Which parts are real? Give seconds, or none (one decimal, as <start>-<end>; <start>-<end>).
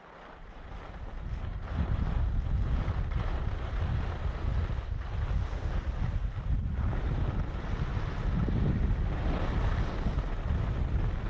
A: 0.0-11.3